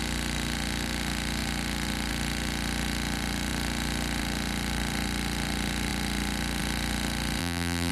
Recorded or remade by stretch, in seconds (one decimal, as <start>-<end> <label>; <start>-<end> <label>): 0.0-7.4 recorded; 7.4-7.9 remade

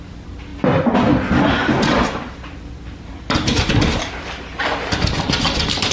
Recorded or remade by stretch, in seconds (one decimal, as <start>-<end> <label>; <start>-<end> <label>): 0.0-5.9 recorded

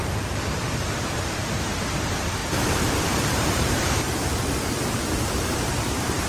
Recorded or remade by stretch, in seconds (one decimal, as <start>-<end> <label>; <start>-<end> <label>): 0.0-6.3 remade

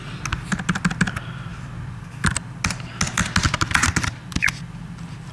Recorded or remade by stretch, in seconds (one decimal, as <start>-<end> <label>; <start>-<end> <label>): 0.0-5.3 recorded

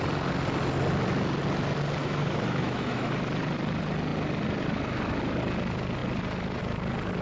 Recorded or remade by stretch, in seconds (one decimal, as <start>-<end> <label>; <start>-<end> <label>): 0.0-2.0 recorded; 2.0-3.1 remade; 3.1-7.2 recorded

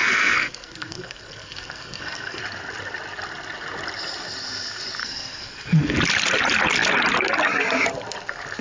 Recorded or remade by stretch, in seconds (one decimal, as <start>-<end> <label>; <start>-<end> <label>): 0.0-2.4 remade; 2.4-5.0 recorded; 5.0-6.0 remade; 6.0-8.6 recorded